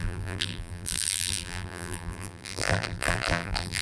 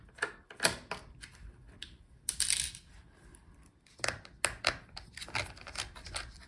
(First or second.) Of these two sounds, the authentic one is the second